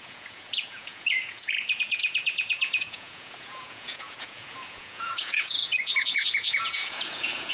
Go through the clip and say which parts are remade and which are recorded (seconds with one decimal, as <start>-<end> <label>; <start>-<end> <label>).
0.0-7.5 remade